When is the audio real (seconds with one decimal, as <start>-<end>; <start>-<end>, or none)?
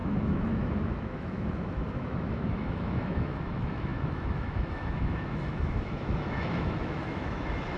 none